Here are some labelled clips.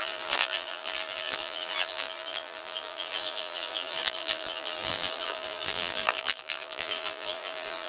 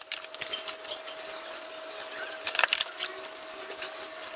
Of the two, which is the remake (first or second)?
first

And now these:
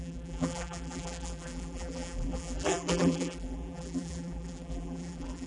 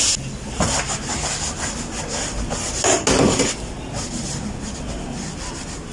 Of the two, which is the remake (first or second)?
first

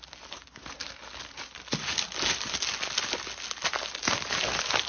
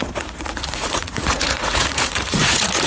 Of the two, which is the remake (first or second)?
second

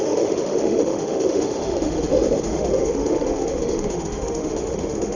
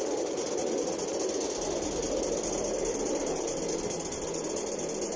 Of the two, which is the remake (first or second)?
first